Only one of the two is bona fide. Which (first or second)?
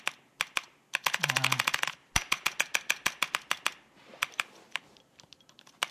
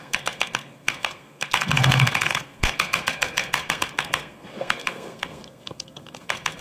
first